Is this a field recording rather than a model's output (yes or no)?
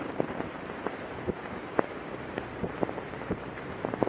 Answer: no